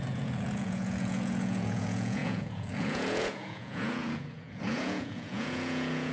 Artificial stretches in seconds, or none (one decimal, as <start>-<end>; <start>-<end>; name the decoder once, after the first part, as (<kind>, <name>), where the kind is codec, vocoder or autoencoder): 0.0-6.1 (vocoder, Vocos)